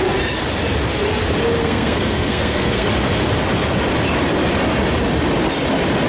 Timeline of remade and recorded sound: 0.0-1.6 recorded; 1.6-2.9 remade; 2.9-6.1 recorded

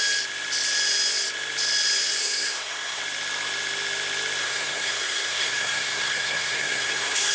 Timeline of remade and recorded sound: 0.0-2.2 recorded; 2.2-3.0 remade; 3.0-4.4 recorded; 4.4-7.3 remade

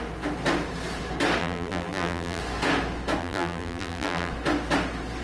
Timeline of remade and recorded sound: 0.0-1.4 recorded; 1.4-2.4 remade; 2.4-3.2 recorded; 3.2-4.3 remade; 4.3-5.2 recorded

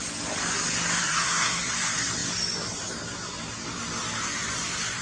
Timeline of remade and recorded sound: 0.0-1.0 recorded; 1.0-1.7 remade; 1.7-5.0 recorded

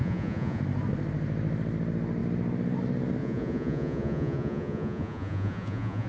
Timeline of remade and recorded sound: 0.0-0.6 remade; 0.6-3.2 recorded; 3.2-6.1 remade

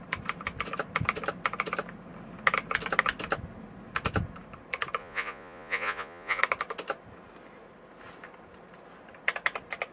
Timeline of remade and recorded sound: 0.0-5.0 recorded; 5.0-6.4 remade; 6.4-9.9 recorded

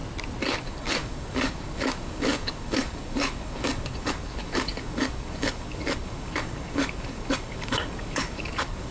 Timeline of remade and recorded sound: 0.0-0.6 recorded; 0.6-8.9 remade